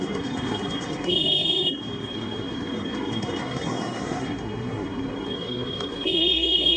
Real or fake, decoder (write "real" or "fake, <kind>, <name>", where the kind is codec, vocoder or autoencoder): fake, codec, SNAC